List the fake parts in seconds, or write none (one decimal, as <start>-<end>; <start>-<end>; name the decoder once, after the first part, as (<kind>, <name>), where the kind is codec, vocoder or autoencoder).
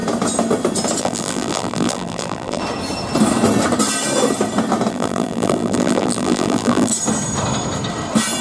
1.0-2.6 (vocoder, BigVGAN v2); 4.9-6.9